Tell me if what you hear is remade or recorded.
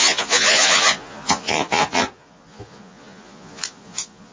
remade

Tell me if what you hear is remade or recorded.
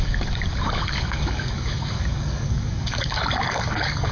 remade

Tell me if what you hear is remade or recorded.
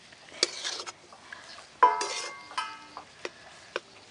recorded